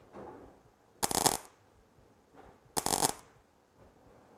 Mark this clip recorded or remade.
recorded